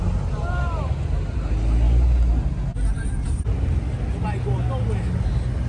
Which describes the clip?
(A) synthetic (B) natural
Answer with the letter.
B